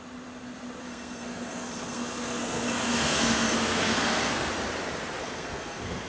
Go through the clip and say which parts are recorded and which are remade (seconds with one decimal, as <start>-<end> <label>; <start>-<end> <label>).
0.0-0.8 recorded; 0.8-4.5 remade; 4.5-5.2 recorded; 5.2-6.1 remade